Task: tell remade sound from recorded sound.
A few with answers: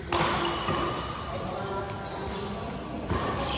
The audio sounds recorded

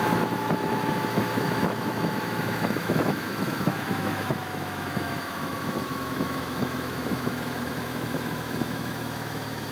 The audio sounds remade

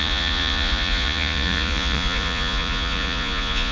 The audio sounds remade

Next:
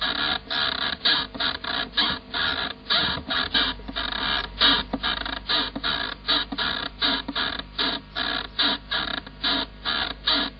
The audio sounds recorded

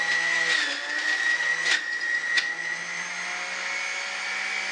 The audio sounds recorded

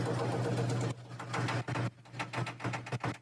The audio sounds recorded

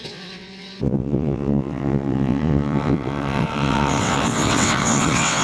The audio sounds remade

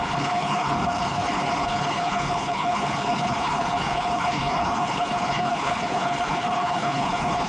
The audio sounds remade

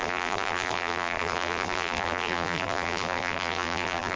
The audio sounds remade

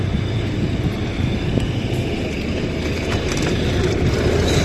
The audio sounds recorded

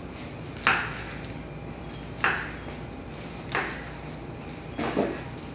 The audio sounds recorded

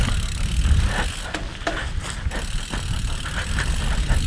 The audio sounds recorded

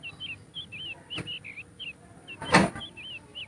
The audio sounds recorded